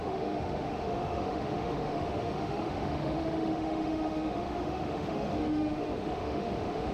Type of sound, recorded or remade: remade